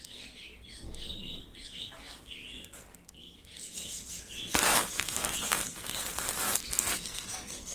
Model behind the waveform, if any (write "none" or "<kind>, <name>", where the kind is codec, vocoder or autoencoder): codec, SNAC